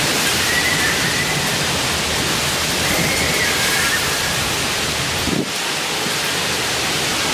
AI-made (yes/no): no